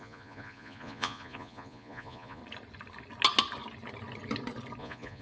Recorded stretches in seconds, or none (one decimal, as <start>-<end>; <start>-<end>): 2.4-4.8